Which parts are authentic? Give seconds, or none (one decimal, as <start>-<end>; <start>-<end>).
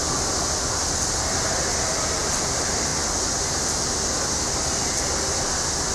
0.0-5.9